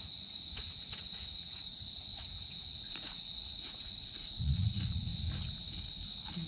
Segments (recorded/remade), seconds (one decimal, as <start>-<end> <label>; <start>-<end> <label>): 0.0-5.1 remade; 5.1-6.5 recorded